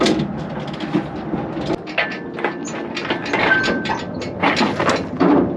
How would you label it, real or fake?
real